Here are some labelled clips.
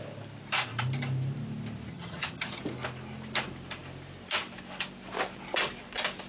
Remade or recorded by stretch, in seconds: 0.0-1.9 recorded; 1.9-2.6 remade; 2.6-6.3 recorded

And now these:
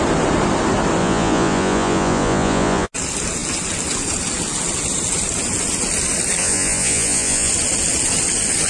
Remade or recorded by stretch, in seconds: 0.0-1.0 recorded; 1.0-2.9 remade; 2.9-6.4 recorded; 6.4-7.5 remade; 7.5-8.7 recorded

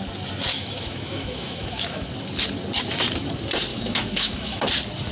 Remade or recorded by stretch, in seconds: 0.0-0.5 recorded; 0.5-2.1 remade; 2.1-3.7 recorded; 3.7-4.6 remade; 4.6-5.1 recorded

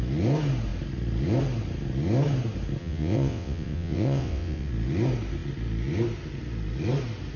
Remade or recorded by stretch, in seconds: 0.0-2.8 recorded; 2.8-4.7 remade; 4.7-7.4 recorded

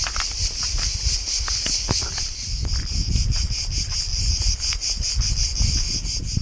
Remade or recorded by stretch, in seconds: 0.0-1.2 remade; 1.2-4.1 recorded; 4.1-5.3 remade; 5.3-6.4 recorded

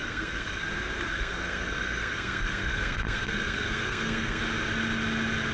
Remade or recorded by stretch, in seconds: 0.0-0.6 remade; 0.6-1.1 recorded; 1.1-4.4 remade; 4.4-5.5 recorded

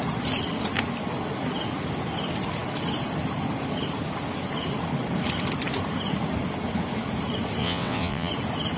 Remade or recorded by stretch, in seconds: 0.0-7.6 recorded; 7.6-8.3 remade; 8.3-8.8 recorded

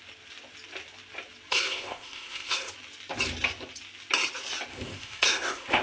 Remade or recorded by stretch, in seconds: 0.0-1.5 recorded; 1.5-2.7 remade; 2.7-4.7 recorded; 4.7-5.8 remade